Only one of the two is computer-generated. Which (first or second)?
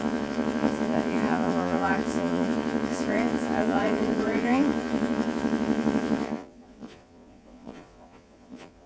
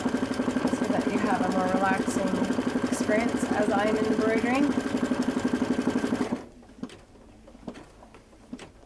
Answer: first